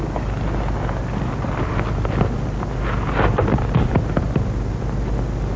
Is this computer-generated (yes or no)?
no